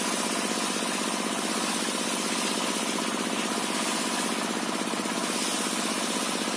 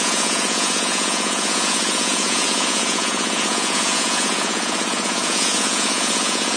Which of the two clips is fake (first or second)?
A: second